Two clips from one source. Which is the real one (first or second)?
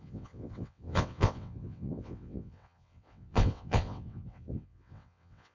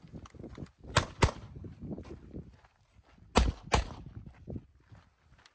second